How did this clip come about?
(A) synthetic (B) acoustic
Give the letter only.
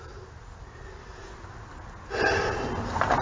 B